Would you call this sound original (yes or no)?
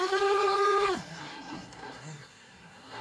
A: no